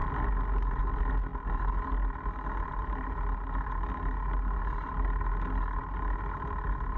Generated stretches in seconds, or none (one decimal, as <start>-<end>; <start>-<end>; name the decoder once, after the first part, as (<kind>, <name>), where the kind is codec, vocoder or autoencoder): none